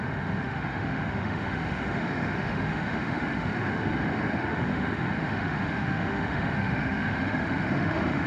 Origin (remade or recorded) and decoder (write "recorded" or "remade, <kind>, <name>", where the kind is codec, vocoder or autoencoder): remade, autoencoder, DAC-VAE